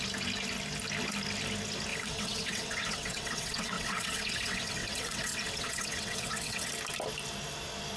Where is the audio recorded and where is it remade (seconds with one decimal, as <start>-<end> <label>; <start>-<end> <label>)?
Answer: 0.0-1.9 recorded; 1.9-6.7 remade; 6.7-8.0 recorded